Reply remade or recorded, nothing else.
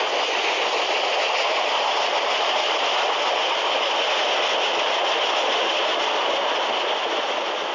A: recorded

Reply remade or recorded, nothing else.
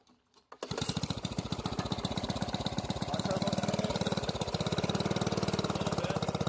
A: recorded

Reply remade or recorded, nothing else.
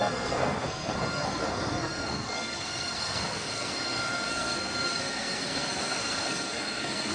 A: remade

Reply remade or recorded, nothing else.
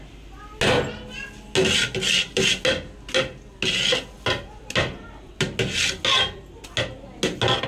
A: recorded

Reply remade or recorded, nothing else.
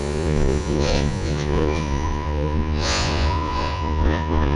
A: remade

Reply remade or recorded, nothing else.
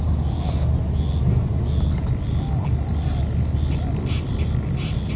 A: recorded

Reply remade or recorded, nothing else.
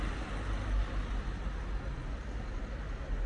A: recorded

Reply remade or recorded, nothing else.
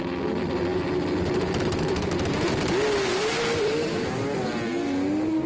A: recorded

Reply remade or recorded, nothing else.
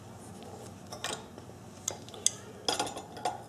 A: recorded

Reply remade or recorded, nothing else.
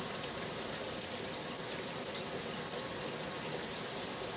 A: remade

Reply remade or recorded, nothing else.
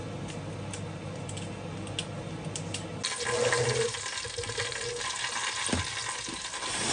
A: recorded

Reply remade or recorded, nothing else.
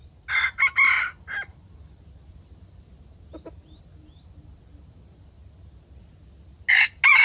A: recorded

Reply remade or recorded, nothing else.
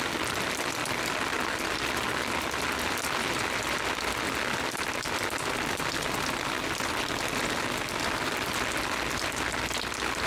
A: recorded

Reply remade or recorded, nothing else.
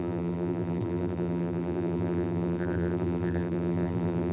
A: remade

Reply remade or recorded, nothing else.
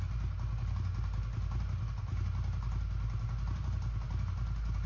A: recorded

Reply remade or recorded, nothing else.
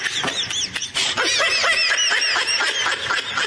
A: recorded